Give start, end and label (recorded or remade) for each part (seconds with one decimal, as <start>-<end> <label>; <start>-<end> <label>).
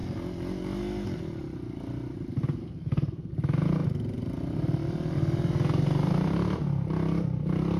0.0-2.6 recorded; 2.6-3.3 remade; 3.3-7.8 recorded